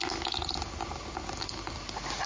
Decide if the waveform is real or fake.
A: real